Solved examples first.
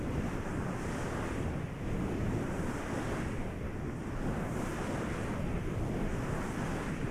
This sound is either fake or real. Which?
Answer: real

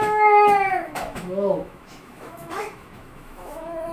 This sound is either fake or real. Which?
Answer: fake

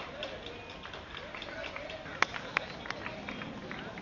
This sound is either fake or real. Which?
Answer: real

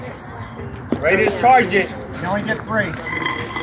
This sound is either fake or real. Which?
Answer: real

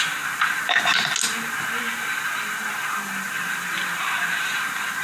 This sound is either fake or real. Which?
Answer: real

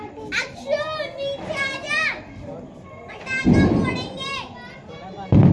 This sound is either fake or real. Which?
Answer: real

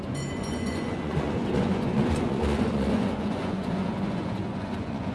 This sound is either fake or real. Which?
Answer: fake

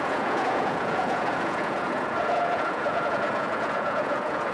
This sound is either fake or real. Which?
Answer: fake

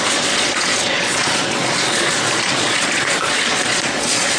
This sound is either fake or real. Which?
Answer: fake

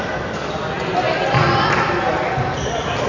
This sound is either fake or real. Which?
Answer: real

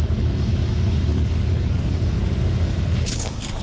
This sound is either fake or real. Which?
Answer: fake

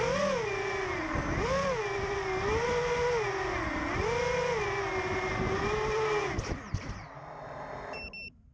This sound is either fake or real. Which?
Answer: real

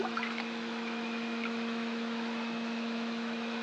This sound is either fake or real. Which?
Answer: fake